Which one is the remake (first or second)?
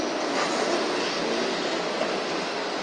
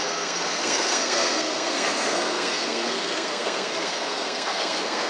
second